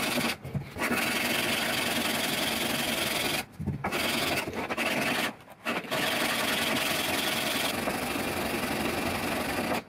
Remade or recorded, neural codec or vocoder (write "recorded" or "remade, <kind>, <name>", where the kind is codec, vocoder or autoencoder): recorded